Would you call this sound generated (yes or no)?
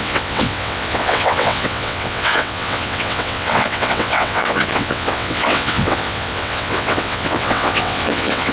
yes